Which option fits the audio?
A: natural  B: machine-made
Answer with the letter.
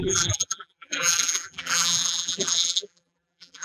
B